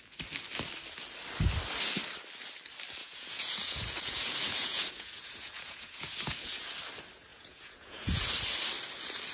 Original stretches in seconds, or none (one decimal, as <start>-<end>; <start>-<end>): 0.0-3.0; 6.7-7.3; 8.3-9.3